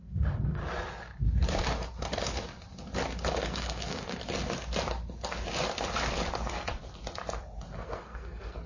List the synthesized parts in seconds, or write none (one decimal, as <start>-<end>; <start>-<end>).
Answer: 0.0-0.6; 3.3-4.2; 7.7-8.7